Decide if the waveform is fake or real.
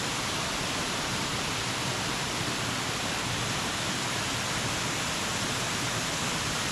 fake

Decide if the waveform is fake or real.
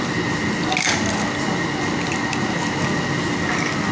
real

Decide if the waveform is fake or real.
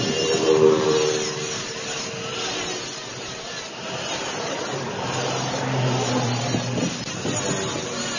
real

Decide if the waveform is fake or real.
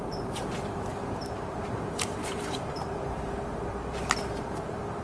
fake